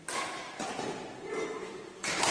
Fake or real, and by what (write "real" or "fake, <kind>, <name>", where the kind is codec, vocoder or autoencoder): real